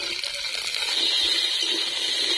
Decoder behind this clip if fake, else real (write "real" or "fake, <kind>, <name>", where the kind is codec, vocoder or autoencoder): real